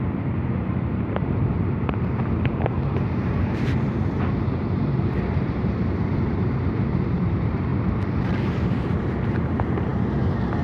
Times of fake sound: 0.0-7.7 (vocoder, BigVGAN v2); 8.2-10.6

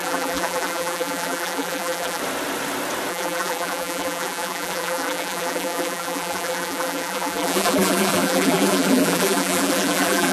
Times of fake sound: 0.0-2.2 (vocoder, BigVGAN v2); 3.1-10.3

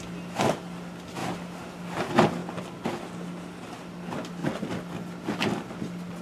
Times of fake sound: none

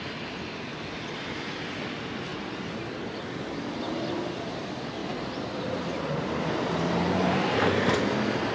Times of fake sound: 5.0-8.5 (vocoder, BigVGAN v2)

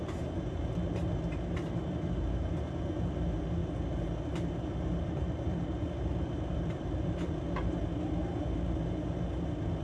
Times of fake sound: 0.0-9.8 (vocoder, BigVGAN v2)

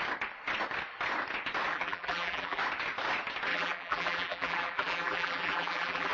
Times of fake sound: 1.7-2.6 (vocoder, BigVGAN v2); 3.5-6.1

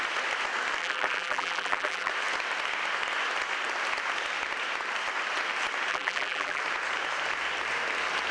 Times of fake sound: 0.8-2.1 (vocoder, BigVGAN v2); 5.9-6.6